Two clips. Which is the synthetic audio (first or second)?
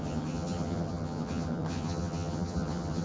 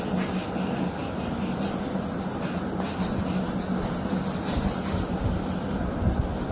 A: first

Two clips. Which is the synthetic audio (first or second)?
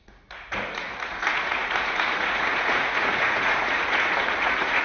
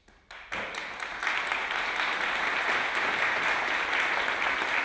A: first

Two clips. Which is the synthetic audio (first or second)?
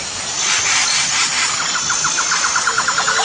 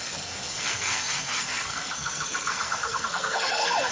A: second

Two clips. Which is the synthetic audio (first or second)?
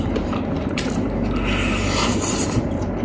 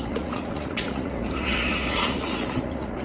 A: second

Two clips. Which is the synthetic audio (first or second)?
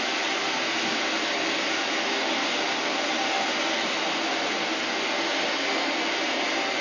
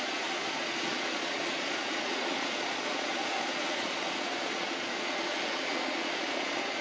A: second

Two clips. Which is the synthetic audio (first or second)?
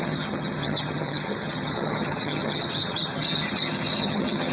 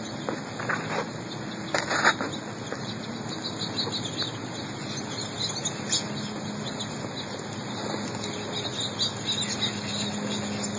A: first